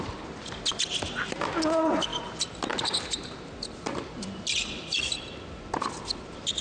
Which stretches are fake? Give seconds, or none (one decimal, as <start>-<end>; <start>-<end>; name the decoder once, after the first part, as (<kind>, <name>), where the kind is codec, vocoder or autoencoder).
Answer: 2.1-5.2 (vocoder, BigVGAN v2)